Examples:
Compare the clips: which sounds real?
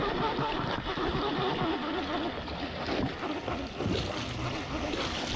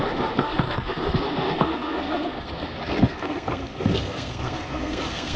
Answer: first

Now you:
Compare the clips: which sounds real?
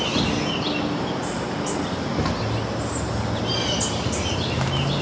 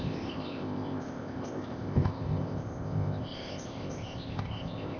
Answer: first